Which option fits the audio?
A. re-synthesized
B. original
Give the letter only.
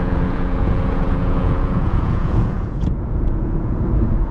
A